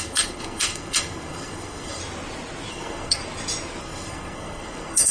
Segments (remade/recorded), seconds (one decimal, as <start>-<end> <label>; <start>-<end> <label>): 0.0-2.0 remade; 2.0-2.7 recorded; 2.7-3.2 remade; 3.2-3.8 recorded; 3.8-5.1 remade